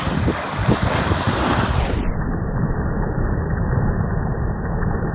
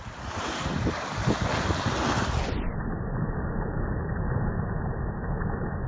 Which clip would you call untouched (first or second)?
second